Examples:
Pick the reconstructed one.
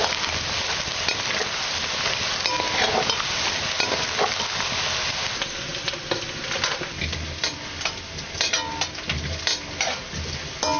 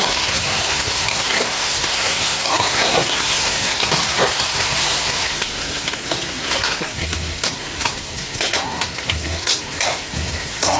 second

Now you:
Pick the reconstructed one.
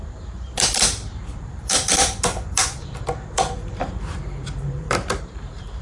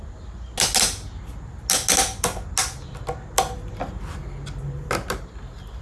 first